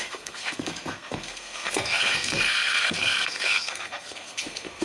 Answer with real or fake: fake